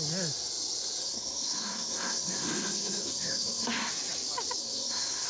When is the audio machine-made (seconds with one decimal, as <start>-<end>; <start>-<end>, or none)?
1.0-3.9; 4.6-5.3